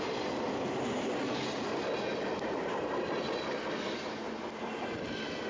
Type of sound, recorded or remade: recorded